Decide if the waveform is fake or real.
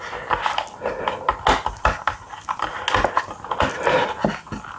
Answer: real